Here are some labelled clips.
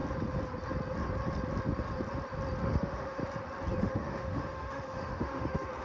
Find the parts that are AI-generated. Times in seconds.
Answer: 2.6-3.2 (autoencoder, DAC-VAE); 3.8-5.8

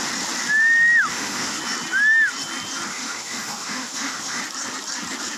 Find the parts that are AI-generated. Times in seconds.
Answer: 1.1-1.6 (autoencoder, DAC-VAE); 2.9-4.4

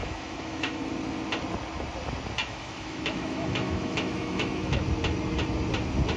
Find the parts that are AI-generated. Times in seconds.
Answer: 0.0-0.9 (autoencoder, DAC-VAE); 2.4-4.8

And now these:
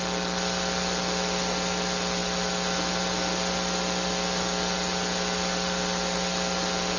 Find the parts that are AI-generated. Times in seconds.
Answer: none